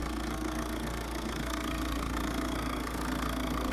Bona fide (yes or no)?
no